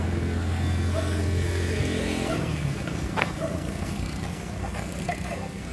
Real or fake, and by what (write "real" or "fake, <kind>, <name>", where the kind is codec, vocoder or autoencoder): fake, codec, SNAC